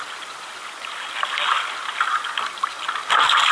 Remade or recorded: recorded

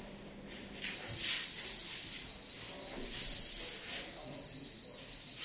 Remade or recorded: recorded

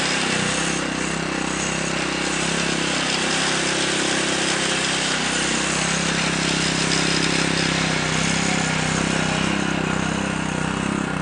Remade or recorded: recorded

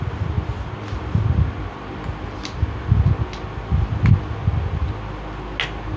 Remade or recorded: recorded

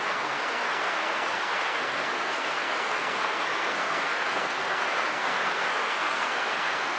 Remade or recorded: remade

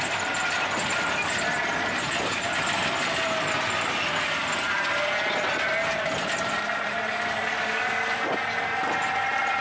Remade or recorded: recorded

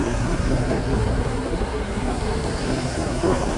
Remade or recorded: remade